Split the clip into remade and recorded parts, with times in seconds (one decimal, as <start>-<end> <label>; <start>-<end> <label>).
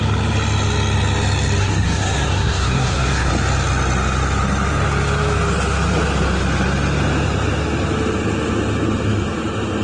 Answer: 0.0-1.6 recorded; 1.6-3.3 remade; 3.3-9.8 recorded